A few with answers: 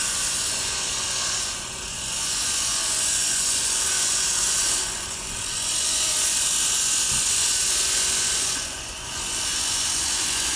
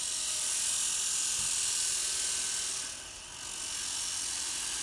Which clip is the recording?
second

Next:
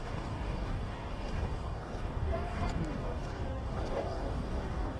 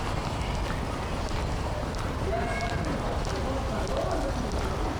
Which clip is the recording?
second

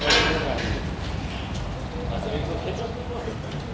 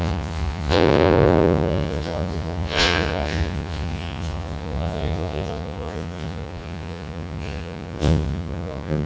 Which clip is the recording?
first